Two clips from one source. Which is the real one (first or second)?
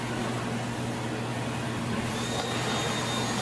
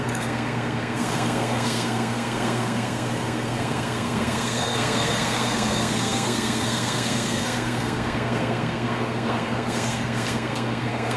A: first